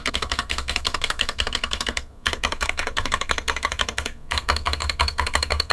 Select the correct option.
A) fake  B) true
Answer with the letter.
A